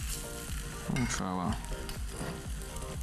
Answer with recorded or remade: recorded